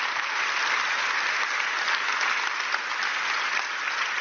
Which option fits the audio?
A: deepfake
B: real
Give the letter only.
B